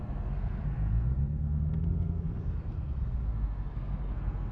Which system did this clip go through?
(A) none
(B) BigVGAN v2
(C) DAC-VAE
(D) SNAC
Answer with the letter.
D